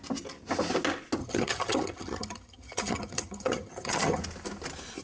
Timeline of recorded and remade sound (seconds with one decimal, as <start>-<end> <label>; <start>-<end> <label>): 0.0-1.2 recorded; 1.2-4.2 remade; 4.2-5.0 recorded